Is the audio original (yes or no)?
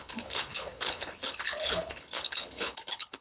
no